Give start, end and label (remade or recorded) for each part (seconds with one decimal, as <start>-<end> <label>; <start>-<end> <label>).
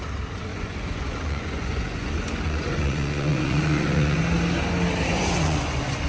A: 0.0-0.5 recorded; 0.5-4.2 remade; 4.2-5.1 recorded; 5.1-6.1 remade